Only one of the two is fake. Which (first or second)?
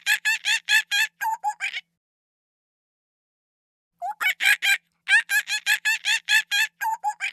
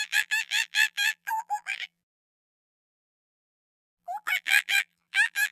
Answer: second